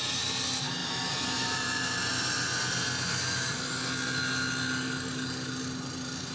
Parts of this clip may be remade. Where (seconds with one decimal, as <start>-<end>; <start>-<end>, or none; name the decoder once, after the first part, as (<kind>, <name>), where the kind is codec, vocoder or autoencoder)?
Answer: 0.8-2.1 (vocoder, BigVGAN v2)